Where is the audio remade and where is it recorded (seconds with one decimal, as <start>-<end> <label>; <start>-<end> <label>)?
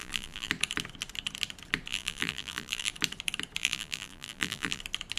0.0-0.5 remade; 0.5-1.9 recorded; 1.9-2.9 remade; 2.9-3.6 recorded; 3.6-4.8 remade; 4.8-5.2 recorded